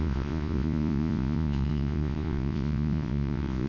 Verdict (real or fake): fake